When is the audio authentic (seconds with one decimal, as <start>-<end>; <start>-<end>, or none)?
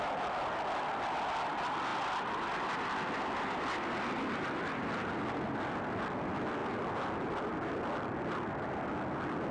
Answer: 0.0-9.5